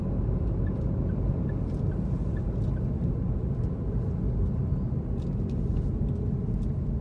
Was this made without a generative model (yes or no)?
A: yes